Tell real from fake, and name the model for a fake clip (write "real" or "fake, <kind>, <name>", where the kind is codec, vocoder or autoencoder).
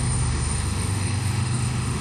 fake, autoencoder, DAC-VAE